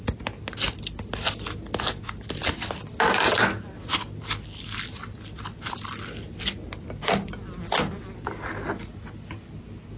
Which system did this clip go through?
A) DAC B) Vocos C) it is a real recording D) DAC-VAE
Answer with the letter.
C